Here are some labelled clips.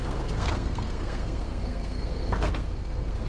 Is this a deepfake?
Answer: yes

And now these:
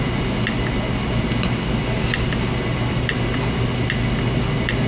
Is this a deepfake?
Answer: no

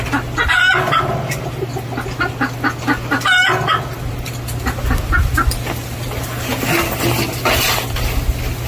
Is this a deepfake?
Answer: no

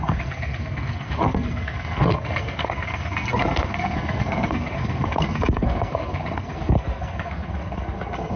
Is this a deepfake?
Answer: yes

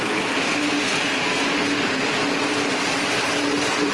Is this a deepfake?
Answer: no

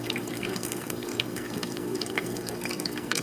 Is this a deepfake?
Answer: yes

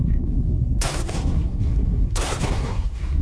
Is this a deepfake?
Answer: yes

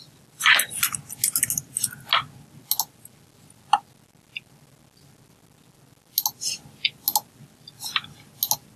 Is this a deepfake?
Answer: no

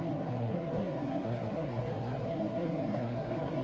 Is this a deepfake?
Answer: yes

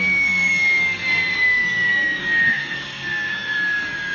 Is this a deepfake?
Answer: yes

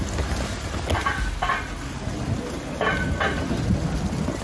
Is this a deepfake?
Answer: no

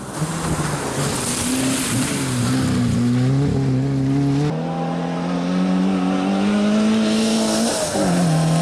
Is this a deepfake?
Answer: no